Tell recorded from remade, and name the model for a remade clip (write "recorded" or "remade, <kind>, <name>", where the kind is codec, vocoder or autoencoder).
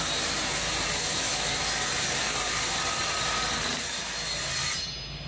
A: recorded